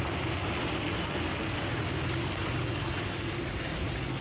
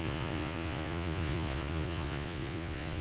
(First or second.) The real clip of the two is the first